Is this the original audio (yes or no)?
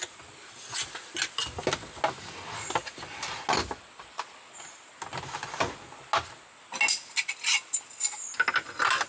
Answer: yes